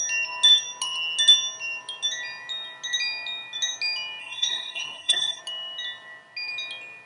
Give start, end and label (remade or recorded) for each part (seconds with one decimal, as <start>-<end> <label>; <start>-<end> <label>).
0.0-4.2 recorded; 4.2-5.4 remade; 5.4-7.1 recorded